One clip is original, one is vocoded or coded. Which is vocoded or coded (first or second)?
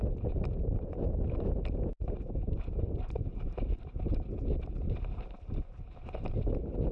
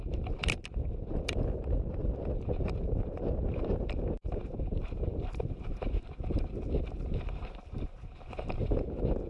second